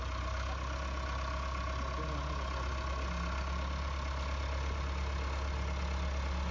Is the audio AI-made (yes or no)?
no